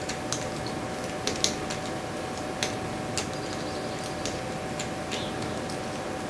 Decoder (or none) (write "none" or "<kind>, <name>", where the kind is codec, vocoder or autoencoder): none